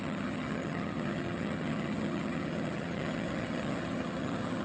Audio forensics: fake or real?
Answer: fake